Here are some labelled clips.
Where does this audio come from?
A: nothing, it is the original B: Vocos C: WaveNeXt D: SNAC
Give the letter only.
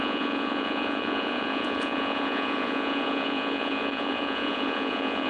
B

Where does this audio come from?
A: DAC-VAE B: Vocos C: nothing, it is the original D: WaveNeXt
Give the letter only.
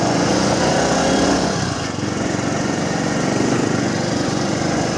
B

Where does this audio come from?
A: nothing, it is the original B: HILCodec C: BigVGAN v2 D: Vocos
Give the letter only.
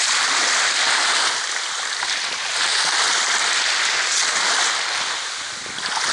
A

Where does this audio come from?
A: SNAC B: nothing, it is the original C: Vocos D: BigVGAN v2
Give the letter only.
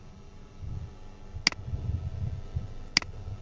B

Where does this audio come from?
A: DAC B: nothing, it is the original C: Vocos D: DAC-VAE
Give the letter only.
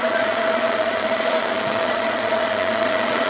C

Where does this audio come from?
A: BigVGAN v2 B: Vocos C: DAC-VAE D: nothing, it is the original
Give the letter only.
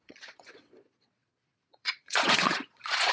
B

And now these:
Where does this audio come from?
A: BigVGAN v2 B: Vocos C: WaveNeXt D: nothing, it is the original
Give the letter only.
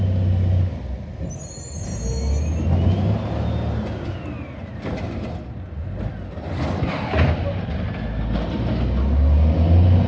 D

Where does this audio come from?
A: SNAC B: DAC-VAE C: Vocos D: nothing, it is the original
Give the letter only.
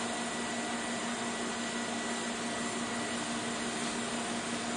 D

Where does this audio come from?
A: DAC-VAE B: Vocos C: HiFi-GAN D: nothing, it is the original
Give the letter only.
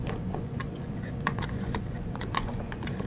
B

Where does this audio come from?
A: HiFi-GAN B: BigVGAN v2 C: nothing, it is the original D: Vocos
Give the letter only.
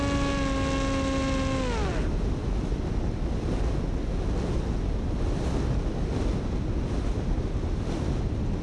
C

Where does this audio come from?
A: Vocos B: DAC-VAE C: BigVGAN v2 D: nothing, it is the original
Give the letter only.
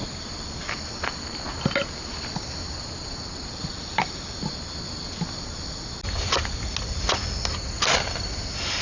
D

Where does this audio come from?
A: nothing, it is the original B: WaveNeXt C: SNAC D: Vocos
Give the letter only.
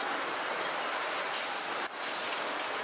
A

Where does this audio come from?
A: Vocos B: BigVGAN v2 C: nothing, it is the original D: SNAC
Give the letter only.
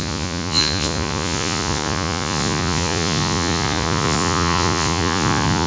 A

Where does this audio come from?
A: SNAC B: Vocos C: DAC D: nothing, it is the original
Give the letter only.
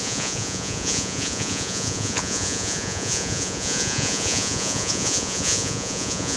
B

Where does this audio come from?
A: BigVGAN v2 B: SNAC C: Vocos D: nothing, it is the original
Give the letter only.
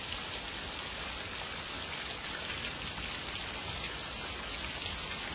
D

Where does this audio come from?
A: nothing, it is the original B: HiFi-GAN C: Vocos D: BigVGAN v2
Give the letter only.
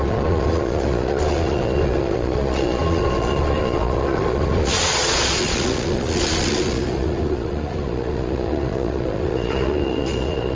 C